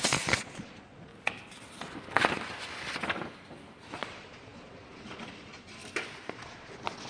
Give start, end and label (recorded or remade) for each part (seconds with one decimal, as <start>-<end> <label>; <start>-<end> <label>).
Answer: 0.0-1.1 remade; 1.1-3.9 recorded; 3.9-5.8 remade; 5.8-6.3 recorded; 6.3-7.1 remade